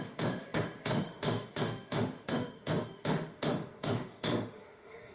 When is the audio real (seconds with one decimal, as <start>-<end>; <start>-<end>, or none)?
none